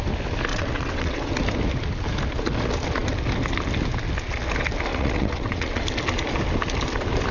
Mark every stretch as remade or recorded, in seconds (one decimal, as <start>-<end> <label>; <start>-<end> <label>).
0.0-0.5 recorded; 0.5-1.3 remade; 1.3-4.9 recorded; 4.9-5.9 remade; 5.9-7.3 recorded